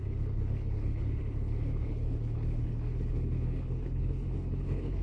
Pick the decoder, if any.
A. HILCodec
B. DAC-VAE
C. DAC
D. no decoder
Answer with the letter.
A